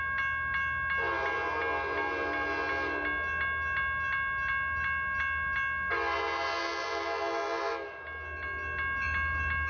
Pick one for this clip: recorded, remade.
recorded